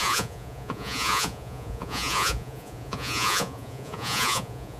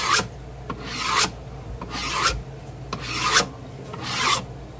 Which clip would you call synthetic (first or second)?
first